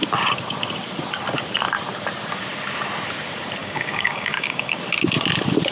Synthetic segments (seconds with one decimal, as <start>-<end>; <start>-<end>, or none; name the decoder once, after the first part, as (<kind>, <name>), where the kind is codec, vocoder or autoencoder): 3.6-4.8 (codec, DAC)